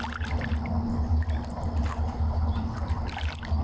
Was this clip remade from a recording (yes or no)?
no